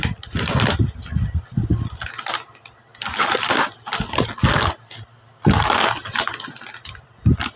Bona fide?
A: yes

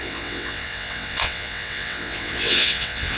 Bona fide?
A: no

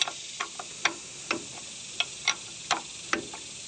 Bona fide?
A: yes